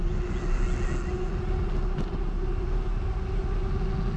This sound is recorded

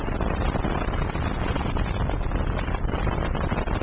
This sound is recorded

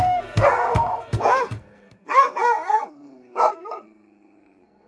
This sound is remade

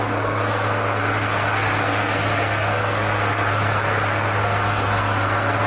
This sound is remade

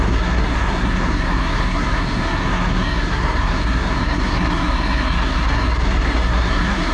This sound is remade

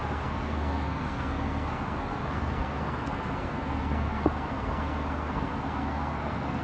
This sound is remade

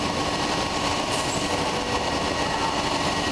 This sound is recorded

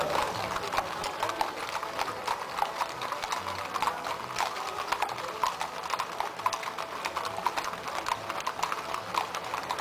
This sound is recorded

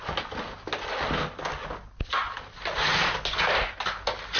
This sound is recorded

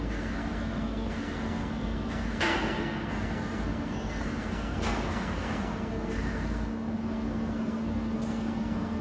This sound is remade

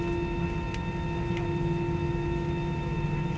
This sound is recorded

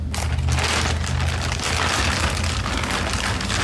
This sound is recorded